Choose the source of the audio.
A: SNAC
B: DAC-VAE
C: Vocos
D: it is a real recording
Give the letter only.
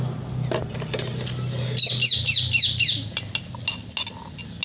D